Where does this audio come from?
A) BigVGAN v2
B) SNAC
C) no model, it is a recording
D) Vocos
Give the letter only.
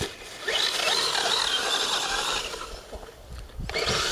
C